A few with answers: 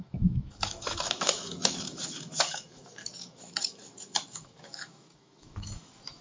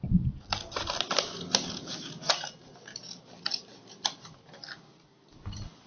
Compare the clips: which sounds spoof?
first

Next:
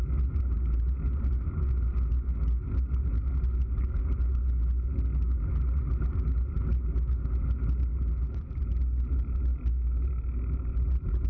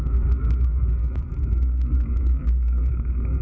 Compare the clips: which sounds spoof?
second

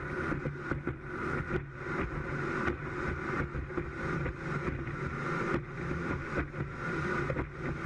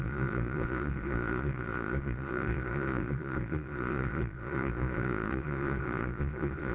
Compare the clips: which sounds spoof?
second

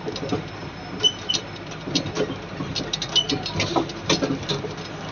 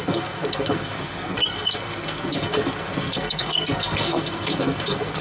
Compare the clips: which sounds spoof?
second